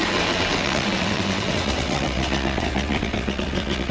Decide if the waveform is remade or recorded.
remade